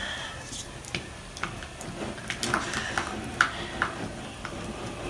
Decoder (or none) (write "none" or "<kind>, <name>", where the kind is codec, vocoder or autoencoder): none